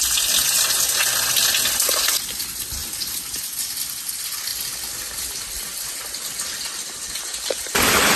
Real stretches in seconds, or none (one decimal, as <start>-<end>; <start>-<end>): 0.0-8.2